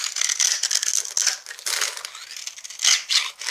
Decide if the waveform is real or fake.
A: real